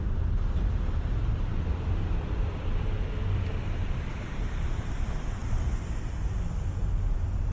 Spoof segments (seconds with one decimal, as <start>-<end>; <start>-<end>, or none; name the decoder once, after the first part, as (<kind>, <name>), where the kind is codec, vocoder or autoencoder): 0.0-5.4 (vocoder, BigVGAN v2); 6.0-7.5